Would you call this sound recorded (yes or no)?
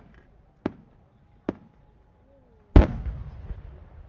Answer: yes